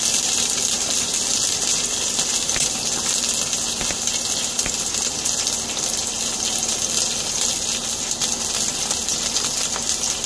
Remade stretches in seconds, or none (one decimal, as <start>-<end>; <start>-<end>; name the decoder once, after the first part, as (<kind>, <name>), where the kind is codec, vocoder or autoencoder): none